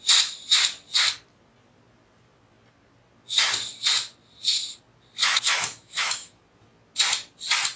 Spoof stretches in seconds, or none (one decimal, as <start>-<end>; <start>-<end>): 5.2-6.4